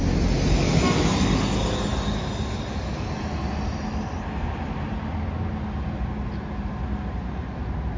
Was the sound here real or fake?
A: real